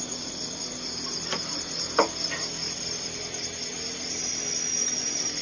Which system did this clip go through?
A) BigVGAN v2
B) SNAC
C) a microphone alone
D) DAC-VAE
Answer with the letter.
C